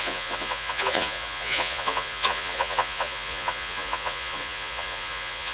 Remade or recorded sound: remade